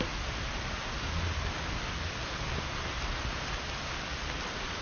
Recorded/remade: recorded